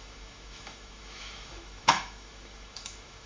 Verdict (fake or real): fake